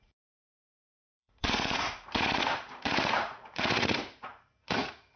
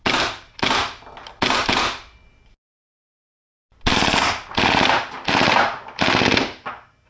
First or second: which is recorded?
second